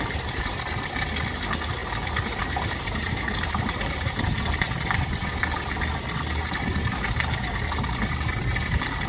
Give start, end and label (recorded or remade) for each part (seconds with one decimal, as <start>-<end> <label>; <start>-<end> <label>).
0.0-1.8 recorded; 1.8-4.2 remade; 4.2-9.1 recorded

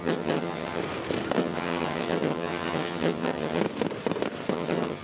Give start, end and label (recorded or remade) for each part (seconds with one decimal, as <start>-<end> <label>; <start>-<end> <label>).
0.0-0.8 remade; 0.8-1.4 recorded; 1.4-3.6 remade; 3.6-4.5 recorded; 4.5-5.0 remade